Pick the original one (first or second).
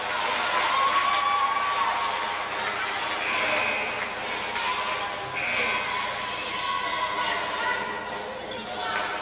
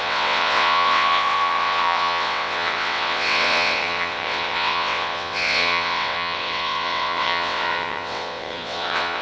first